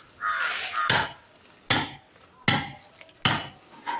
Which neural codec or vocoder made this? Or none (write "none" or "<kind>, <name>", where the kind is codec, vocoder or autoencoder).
none